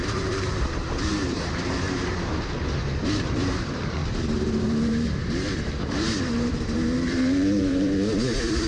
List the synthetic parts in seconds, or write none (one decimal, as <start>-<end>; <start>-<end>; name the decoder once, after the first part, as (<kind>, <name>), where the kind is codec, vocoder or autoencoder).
0.0-4.0 (vocoder, BigVGAN v2); 4.6-8.7